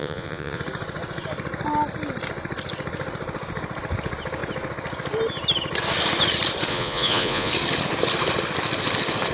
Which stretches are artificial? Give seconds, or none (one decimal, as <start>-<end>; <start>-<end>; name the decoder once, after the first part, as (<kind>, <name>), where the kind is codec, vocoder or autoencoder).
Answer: 0.0-0.6 (vocoder, Vocos); 6.7-7.5